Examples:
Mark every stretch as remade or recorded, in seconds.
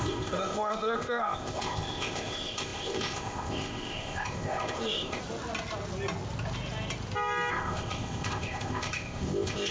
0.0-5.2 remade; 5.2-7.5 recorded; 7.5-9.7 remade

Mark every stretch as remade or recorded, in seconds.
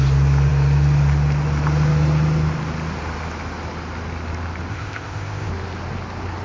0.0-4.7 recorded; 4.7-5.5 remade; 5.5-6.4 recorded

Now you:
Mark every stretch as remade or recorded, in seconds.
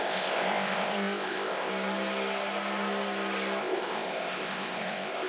0.0-1.7 remade; 1.7-3.6 recorded; 3.6-5.3 remade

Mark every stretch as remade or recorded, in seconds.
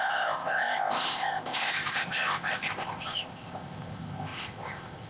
0.0-5.1 remade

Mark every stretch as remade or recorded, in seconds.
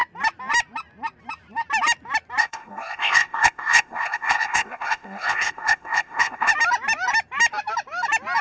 0.0-2.4 recorded; 2.4-6.5 remade; 6.5-8.4 recorded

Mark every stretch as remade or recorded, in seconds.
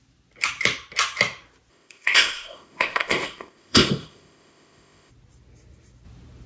0.0-1.7 recorded; 1.7-5.1 remade; 5.1-6.5 recorded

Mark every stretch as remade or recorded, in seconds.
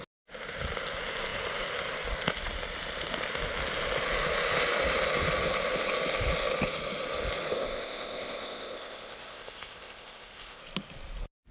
0.0-7.5 recorded; 7.5-10.6 remade; 10.6-11.5 recorded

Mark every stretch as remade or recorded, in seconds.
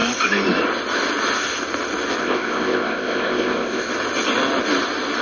0.0-2.2 recorded; 2.2-3.9 remade; 3.9-5.2 recorded